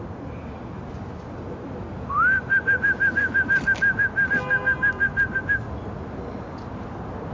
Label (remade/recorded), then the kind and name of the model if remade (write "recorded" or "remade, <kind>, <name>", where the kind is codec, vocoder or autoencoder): recorded